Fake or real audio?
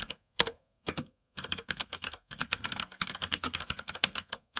fake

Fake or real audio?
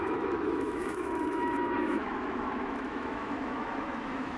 fake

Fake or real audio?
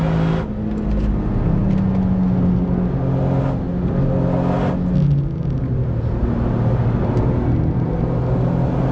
real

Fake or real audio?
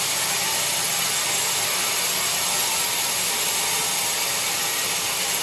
real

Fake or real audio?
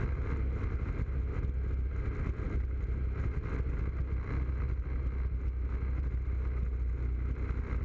real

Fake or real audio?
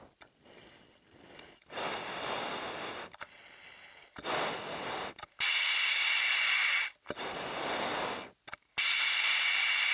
real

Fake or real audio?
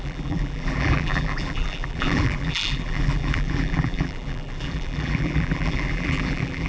fake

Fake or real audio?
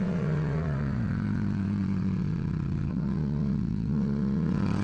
fake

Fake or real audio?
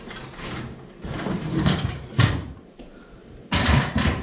fake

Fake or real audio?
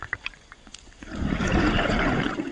fake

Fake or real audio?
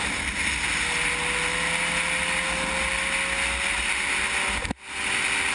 real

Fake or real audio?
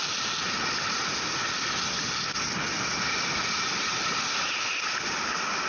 real